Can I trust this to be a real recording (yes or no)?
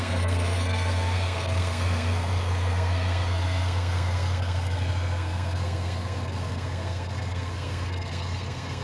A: no